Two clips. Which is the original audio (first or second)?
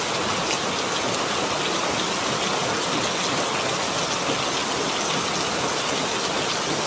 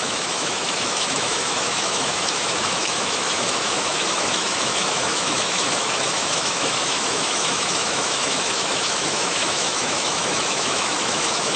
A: first